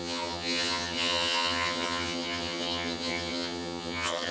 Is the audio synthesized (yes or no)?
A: yes